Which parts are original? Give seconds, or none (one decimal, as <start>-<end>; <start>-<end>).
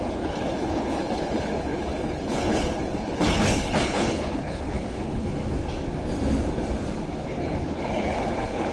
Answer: 5.4-7.1